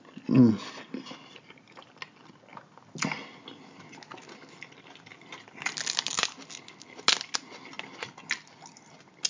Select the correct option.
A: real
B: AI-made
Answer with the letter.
A